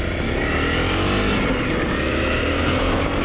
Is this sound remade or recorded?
recorded